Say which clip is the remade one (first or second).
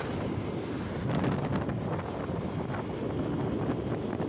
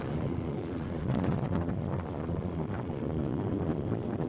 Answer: second